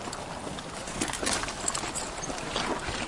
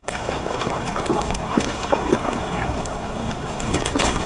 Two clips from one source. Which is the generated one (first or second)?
second